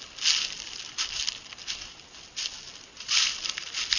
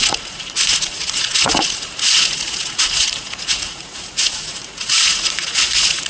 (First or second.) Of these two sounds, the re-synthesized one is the second